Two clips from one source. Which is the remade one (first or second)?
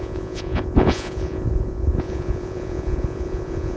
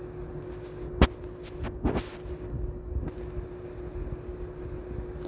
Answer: first